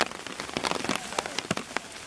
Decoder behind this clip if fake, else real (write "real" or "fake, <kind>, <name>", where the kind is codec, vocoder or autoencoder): real